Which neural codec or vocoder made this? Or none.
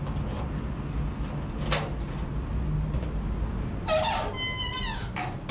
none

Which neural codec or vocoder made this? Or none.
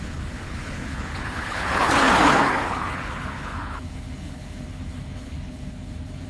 codec, HILCodec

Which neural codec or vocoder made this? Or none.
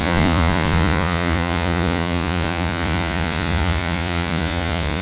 vocoder, Vocos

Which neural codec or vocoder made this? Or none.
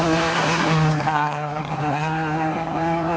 codec, SNAC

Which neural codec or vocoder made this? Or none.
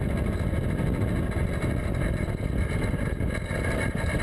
none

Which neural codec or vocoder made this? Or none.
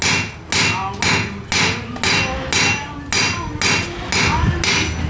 none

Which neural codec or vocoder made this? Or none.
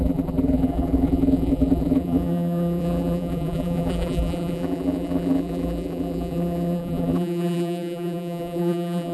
vocoder, BigVGAN v2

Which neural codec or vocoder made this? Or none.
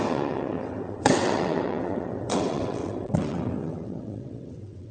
vocoder, WaveNeXt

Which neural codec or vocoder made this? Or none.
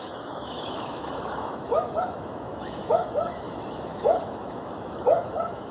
autoencoder, DAC-VAE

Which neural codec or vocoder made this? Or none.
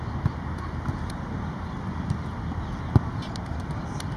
none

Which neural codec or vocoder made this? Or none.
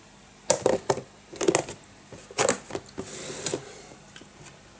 none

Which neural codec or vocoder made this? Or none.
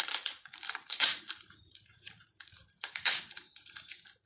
vocoder, BigVGAN v2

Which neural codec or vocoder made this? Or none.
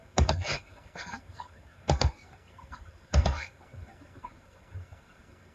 codec, SNAC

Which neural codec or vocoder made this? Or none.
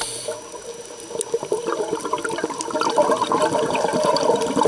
none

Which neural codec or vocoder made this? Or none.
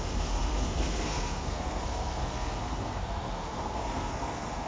codec, SNAC